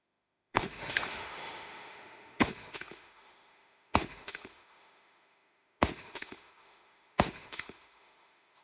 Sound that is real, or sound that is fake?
fake